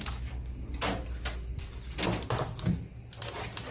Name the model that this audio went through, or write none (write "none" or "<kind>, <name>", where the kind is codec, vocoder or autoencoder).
none